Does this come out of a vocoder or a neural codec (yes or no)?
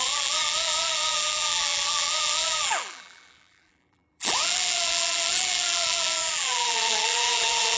yes